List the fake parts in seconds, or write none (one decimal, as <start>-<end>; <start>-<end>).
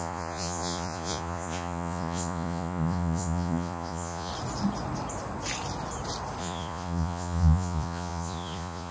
0.0-4.3; 6.4-8.9